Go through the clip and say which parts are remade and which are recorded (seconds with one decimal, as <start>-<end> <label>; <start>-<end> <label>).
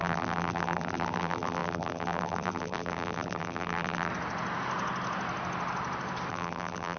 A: 0.0-4.1 remade; 4.1-6.3 recorded; 6.3-7.0 remade